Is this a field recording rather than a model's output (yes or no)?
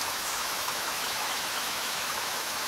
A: no